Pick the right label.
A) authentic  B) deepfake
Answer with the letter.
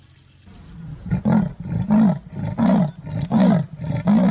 A